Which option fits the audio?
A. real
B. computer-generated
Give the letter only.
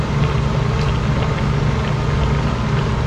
A